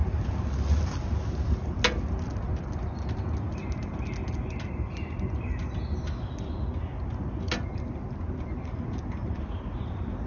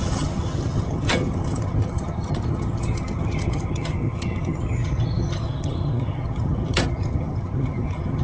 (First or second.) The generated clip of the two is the second